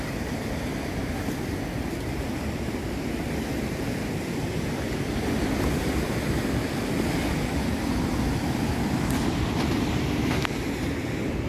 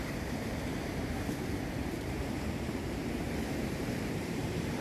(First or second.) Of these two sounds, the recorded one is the first